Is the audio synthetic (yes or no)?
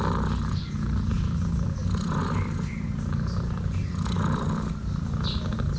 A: no